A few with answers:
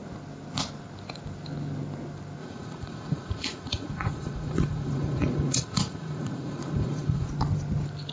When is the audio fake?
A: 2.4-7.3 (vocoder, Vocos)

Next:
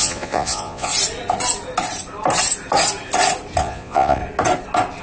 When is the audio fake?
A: 0.0-0.9 (vocoder, Vocos); 3.6-4.2

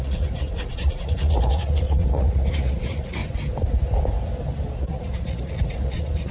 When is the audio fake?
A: 0.0-3.2 (vocoder, Vocos); 4.8-6.3

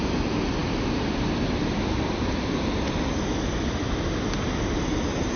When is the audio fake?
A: none

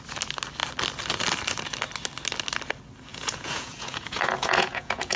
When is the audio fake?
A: 3.1-5.2 (vocoder, Vocos)

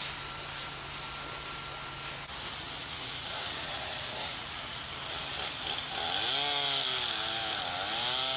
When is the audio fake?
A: 2.8-4.8 (vocoder, Vocos)

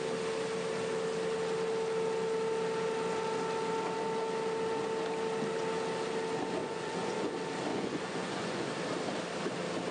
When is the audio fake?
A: 6.6-7.3 (vocoder, Vocos); 7.7-8.7

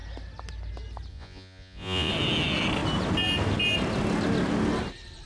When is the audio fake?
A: 1.1-2.1 (vocoder, Vocos)